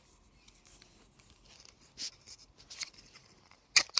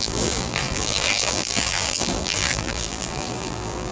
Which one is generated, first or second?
second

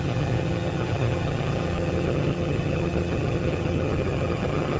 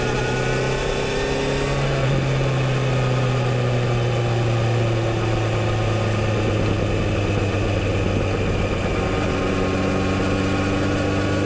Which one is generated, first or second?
first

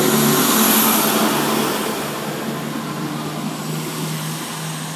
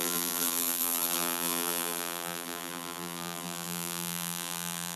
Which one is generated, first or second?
second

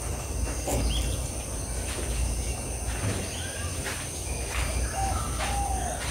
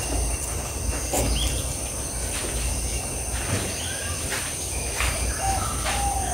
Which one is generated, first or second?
second